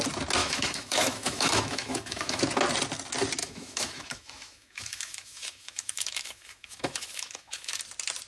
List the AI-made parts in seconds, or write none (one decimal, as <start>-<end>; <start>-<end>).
0.4-2.4; 3.4-7.8